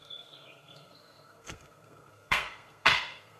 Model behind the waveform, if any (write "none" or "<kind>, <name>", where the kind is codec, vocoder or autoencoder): codec, SNAC